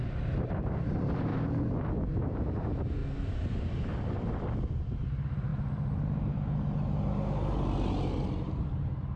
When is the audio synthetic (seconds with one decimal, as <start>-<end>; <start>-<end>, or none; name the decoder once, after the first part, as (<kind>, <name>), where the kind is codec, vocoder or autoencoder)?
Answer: 0.0-1.3 (vocoder, BigVGAN v2); 2.0-3.0; 4.6-5.5; 8.4-9.2